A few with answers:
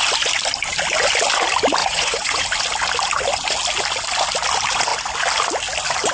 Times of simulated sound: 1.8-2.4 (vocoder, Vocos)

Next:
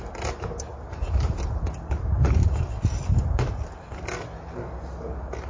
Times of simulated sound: 0.7-4.0 (vocoder, BigVGAN v2)

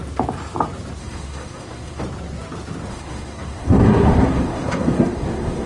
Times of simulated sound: 1.0-2.0 (codec, SNAC); 2.9-5.7

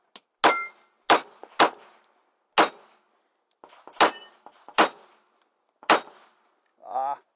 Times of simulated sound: none

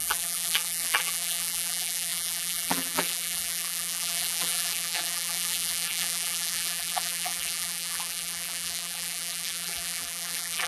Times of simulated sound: 0.0-10.7 (vocoder, BigVGAN v2)